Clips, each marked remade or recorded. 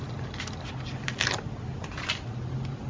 recorded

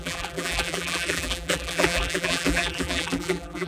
remade